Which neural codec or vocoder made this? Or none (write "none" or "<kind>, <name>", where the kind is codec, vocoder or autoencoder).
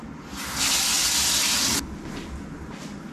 none